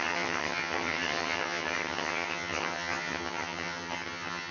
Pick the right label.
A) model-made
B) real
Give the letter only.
A